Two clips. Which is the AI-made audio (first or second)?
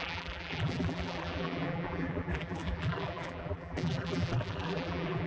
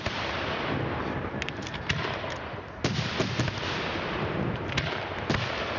first